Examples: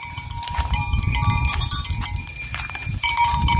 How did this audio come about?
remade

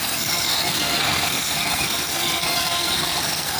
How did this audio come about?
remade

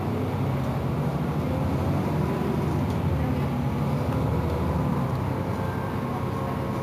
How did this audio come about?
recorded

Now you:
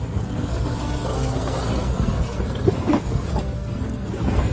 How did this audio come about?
remade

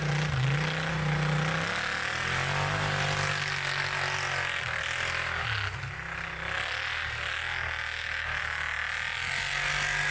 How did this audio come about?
recorded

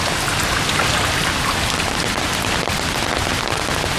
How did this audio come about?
recorded